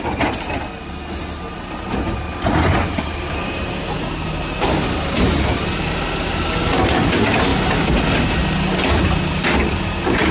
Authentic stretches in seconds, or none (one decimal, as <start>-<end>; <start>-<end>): 0.0-10.3